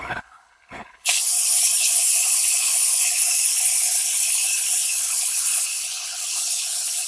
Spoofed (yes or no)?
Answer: yes